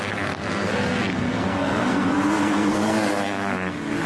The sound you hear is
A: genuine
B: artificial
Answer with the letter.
B